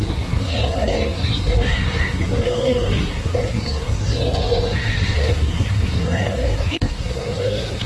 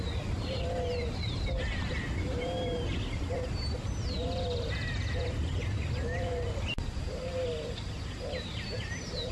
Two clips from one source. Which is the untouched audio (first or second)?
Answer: second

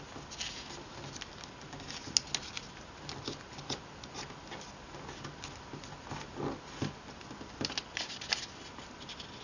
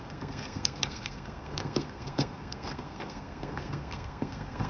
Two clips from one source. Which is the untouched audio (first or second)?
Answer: first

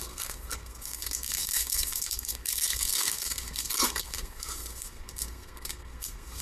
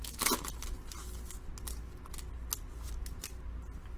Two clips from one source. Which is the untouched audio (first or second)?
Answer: second